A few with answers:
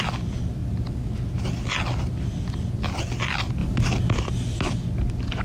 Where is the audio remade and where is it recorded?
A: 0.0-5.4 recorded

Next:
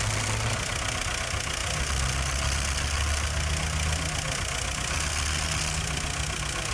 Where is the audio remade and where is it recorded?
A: 0.0-6.7 recorded